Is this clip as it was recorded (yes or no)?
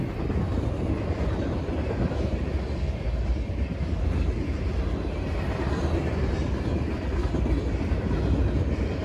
yes